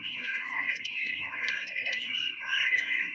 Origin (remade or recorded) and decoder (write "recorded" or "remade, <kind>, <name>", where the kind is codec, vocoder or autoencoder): remade, codec, SNAC